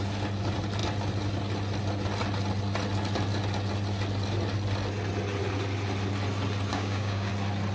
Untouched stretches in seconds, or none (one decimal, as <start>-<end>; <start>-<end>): 0.0-6.7; 7.3-7.7